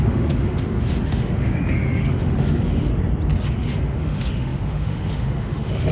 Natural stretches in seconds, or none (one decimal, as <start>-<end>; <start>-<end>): 2.9-3.5